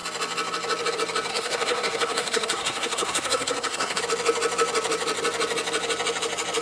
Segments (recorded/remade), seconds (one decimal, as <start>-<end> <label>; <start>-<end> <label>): 0.0-1.3 recorded; 1.3-4.0 remade; 4.0-6.6 recorded

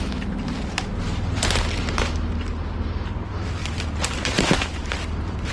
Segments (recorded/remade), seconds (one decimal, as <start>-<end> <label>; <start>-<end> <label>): 0.0-3.6 recorded; 3.6-5.5 remade

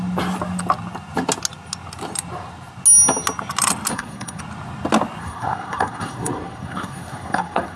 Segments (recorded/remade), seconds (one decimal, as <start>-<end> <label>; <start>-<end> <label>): 0.0-3.9 recorded; 3.9-4.4 remade; 4.4-5.2 recorded; 5.2-7.8 remade

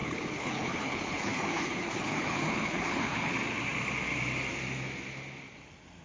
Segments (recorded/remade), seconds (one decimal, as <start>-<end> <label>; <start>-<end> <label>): 0.0-3.3 remade; 3.3-6.0 recorded

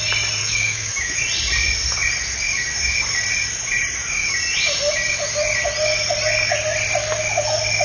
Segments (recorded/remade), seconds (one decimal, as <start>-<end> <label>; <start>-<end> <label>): 0.0-0.4 recorded; 0.4-1.2 remade; 1.2-7.8 recorded

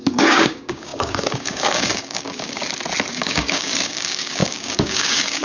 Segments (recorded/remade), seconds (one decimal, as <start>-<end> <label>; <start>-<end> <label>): 0.0-2.6 remade; 2.6-3.1 recorded; 3.1-5.4 remade

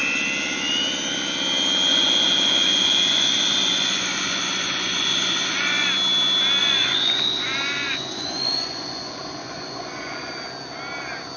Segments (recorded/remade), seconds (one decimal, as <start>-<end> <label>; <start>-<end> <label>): 0.0-1.9 recorded; 1.9-5.9 remade; 5.9-6.6 recorded; 6.6-10.3 remade; 10.3-11.4 recorded

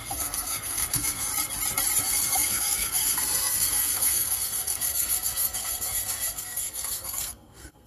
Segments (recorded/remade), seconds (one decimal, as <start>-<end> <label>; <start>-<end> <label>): 0.0-1.3 remade; 1.3-2.0 recorded; 2.0-7.9 remade